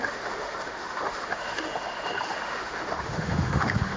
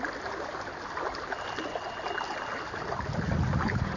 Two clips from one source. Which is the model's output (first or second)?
first